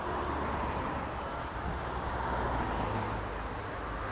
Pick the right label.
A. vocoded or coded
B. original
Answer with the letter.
B